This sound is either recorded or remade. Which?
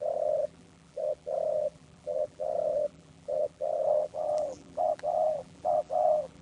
remade